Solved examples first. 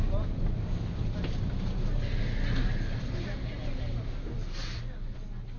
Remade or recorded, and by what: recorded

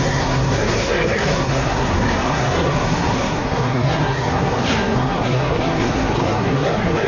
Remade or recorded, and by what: remade, codec, SNAC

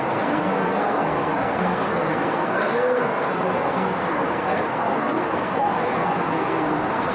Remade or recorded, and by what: remade, codec, SNAC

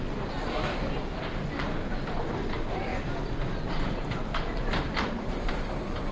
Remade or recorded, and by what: recorded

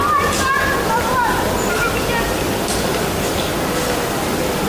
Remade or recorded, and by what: recorded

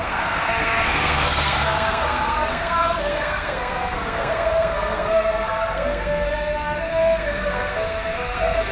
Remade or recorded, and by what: remade, codec, SNAC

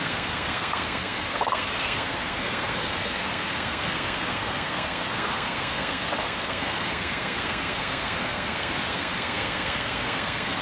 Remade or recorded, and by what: remade, codec, SNAC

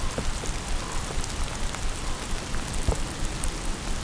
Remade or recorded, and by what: recorded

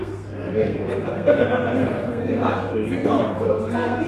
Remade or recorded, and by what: remade, codec, SNAC